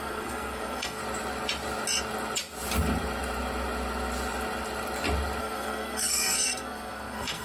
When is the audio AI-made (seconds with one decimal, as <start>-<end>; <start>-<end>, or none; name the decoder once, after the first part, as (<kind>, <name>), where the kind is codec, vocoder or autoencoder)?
0.0-1.0 (codec, SNAC); 5.4-7.4